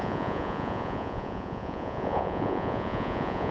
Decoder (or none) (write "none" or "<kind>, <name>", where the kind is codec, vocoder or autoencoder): vocoder, Vocos